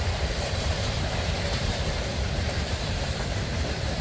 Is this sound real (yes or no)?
no